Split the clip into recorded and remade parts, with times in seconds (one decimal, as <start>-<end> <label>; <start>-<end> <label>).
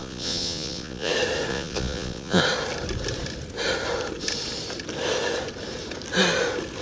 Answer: 0.0-1.1 remade; 1.1-1.5 recorded; 1.5-2.4 remade; 2.4-6.8 recorded